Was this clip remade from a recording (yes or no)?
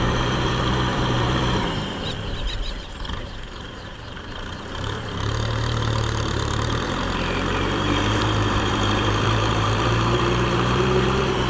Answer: yes